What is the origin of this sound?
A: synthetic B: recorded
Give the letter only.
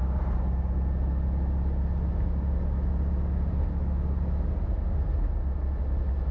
B